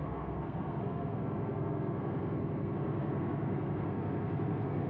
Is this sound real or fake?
fake